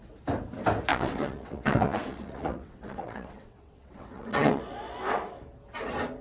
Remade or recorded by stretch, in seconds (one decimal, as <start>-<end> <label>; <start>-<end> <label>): 0.0-0.9 recorded; 0.9-4.6 remade; 4.6-6.2 recorded